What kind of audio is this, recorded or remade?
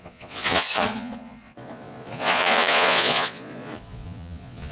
remade